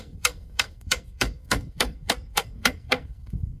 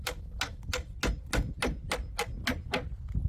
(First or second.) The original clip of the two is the second